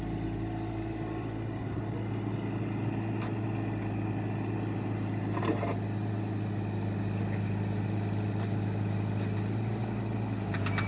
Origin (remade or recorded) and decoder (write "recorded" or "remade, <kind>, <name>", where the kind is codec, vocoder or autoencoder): recorded